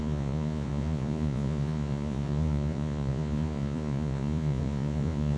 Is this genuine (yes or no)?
no